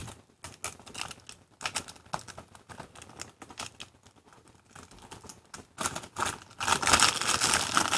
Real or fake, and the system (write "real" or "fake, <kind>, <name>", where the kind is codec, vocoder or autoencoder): real